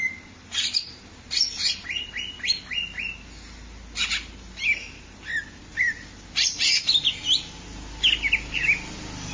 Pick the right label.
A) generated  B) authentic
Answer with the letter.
B